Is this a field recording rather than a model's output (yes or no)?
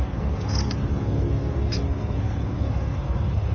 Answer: no